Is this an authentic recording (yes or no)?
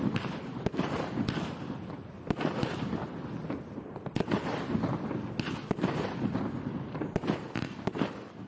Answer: yes